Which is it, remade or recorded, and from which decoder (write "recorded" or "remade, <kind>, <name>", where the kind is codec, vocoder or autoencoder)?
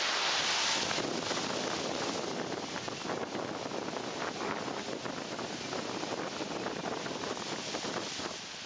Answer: recorded